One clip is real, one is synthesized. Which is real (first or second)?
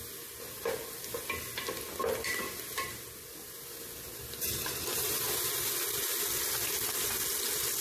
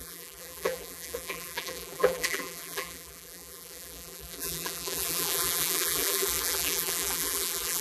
first